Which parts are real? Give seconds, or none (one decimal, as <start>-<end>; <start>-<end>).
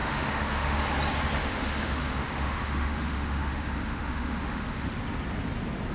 0.8-1.4; 4.9-5.9